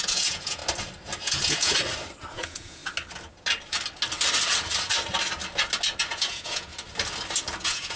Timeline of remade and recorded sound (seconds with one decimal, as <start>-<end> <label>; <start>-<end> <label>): 0.0-0.6 remade; 0.6-1.2 recorded; 1.2-1.8 remade; 1.8-2.3 recorded; 2.3-2.8 remade; 2.8-6.0 recorded; 6.0-6.7 remade; 6.7-7.6 recorded; 7.6-8.0 remade